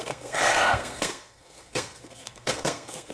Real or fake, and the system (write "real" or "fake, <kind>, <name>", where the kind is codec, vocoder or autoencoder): fake, codec, SNAC